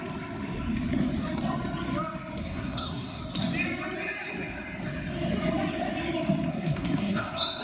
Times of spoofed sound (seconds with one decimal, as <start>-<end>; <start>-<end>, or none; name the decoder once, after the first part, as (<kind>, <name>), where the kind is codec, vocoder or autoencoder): 2.4-3.2 (codec, SNAC); 6.5-7.6